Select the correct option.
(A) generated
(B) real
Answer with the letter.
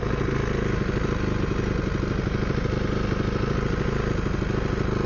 B